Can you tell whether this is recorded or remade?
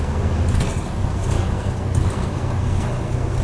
remade